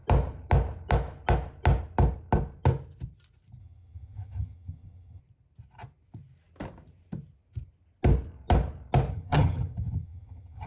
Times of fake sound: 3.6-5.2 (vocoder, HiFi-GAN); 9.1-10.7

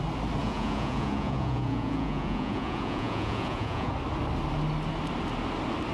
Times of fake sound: 0.4-3.9 (vocoder, Vocos)

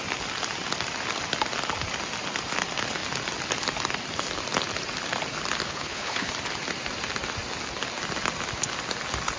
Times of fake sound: 5.6-6.3 (codec, HILCodec)

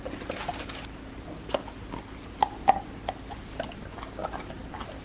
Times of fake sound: 4.2-5.0 (vocoder, BigVGAN v2)